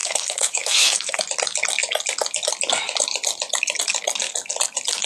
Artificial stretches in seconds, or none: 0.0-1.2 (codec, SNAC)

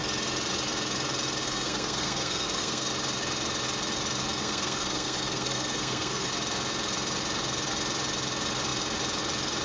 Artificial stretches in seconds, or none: 1.4-2.9 (codec, SNAC); 4.4-6.3